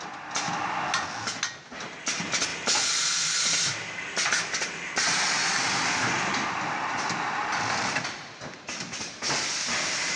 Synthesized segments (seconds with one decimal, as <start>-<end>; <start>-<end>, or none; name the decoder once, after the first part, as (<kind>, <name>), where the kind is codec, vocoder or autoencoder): none